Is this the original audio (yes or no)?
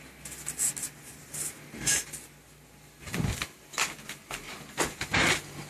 yes